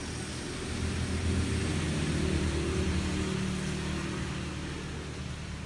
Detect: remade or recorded recorded